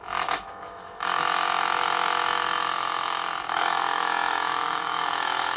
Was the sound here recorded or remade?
remade